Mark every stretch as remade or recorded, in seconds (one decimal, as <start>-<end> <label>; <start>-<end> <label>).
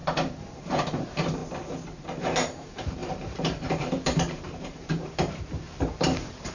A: 0.0-1.4 remade; 1.4-2.2 recorded; 2.2-6.5 remade